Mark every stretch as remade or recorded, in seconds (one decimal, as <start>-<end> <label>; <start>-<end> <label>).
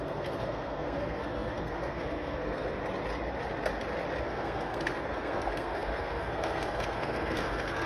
0.0-2.8 remade; 2.8-4.2 recorded; 4.2-7.9 remade